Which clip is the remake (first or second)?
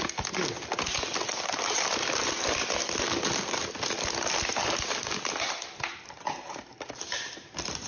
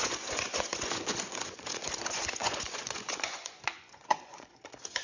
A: second